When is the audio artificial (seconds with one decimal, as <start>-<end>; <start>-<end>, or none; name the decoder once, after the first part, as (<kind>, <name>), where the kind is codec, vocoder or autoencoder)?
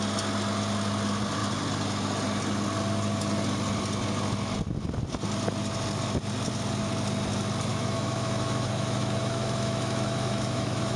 7.7-11.0 (autoencoder, DAC-VAE)